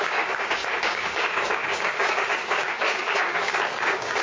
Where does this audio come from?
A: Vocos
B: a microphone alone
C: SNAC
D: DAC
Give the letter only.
D